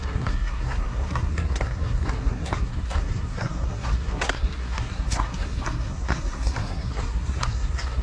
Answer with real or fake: fake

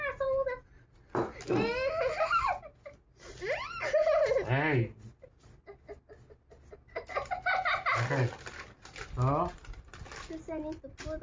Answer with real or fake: real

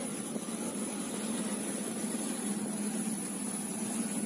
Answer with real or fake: real